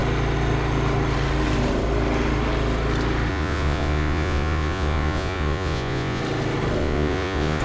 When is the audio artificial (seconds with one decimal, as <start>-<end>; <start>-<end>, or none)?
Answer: 3.3-6.2; 6.8-7.6